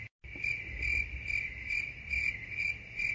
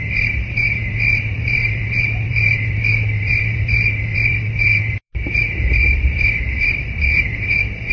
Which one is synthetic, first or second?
second